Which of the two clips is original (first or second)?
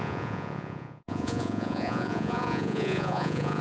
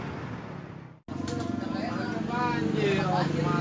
second